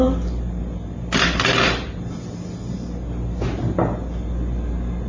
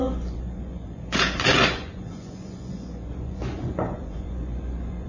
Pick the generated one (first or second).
second